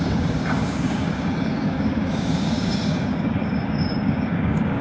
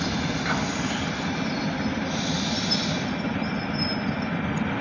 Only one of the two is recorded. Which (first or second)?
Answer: second